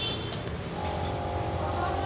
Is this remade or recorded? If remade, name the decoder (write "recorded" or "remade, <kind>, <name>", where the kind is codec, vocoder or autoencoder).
recorded